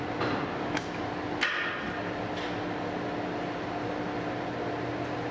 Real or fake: real